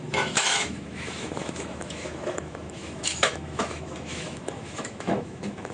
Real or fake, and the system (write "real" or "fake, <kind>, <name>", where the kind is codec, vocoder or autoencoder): fake, autoencoder, DAC-VAE